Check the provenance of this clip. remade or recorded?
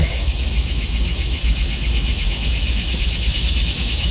remade